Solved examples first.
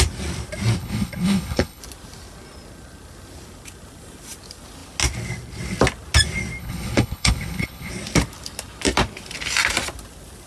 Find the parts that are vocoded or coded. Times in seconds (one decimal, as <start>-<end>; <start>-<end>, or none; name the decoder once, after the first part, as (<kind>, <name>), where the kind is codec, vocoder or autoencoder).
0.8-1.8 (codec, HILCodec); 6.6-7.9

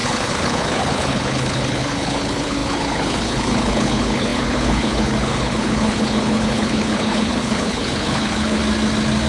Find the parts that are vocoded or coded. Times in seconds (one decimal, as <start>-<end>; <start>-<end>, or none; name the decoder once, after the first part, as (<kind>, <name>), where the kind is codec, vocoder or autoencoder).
0.0-8.6 (codec, HILCodec)

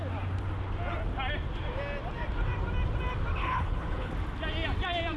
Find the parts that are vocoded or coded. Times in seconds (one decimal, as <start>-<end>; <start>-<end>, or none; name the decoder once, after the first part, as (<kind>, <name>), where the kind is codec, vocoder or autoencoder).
3.3-4.1 (codec, HILCodec)

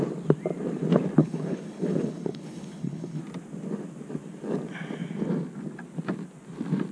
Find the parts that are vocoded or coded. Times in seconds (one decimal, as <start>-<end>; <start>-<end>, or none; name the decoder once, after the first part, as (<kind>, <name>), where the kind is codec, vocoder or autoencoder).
1.2-3.2 (codec, HILCodec)

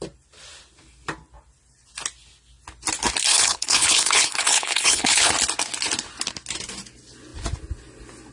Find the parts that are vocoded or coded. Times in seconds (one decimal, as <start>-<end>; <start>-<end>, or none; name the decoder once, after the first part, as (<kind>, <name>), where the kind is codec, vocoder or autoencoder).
3.3-5.3 (codec, HILCodec)